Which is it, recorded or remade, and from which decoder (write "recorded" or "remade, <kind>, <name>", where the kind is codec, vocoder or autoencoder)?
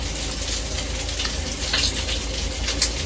recorded